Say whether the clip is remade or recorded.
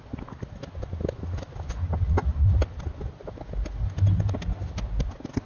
recorded